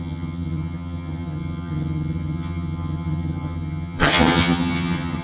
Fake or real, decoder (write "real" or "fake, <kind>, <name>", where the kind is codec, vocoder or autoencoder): fake, vocoder, HiFi-GAN